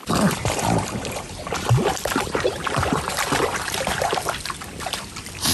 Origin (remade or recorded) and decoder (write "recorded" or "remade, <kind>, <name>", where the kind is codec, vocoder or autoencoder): remade, vocoder, BigVGAN v2